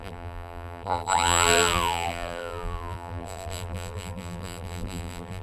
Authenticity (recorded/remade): remade